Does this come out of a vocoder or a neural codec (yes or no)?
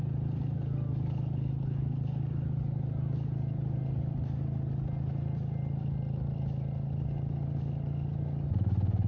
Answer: no